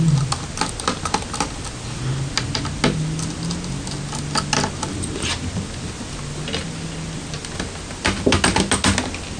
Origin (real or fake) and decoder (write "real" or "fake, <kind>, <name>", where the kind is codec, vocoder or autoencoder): real